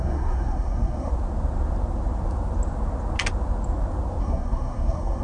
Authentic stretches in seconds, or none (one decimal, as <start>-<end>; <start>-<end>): 1.1-4.2